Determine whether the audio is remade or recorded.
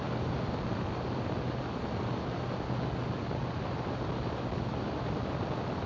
recorded